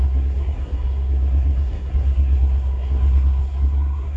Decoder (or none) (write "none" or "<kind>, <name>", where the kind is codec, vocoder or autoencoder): codec, SNAC